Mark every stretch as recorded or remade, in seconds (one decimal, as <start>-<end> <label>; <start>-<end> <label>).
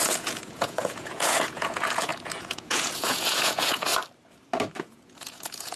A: 0.0-3.9 remade; 3.9-4.8 recorded; 4.8-5.8 remade